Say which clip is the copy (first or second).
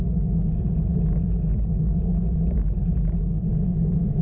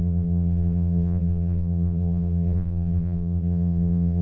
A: second